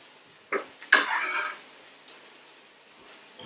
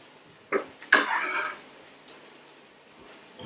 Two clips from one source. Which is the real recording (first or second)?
first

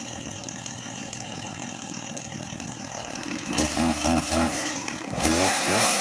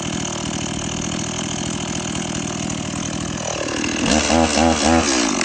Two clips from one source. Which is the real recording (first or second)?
second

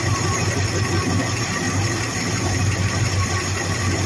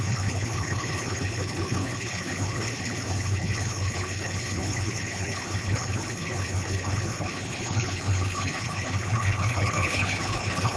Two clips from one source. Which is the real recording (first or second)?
first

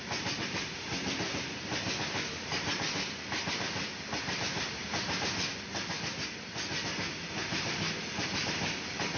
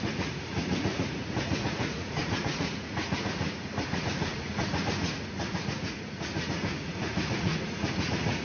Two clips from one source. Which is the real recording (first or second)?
first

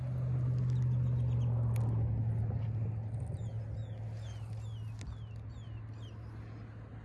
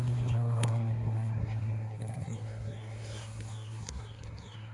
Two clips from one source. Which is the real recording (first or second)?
first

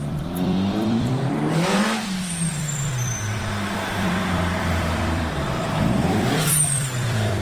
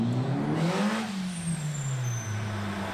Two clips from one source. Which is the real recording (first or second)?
second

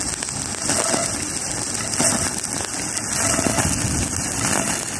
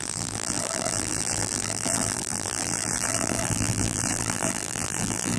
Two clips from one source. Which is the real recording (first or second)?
first